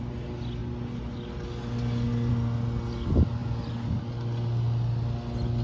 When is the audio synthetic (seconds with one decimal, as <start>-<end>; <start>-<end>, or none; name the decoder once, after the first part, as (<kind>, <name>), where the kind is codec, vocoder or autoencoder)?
none